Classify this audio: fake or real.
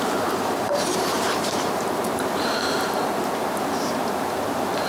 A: fake